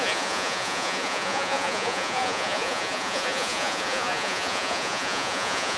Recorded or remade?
remade